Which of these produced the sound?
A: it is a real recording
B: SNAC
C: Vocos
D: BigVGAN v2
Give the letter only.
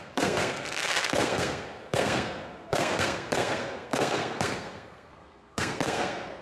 B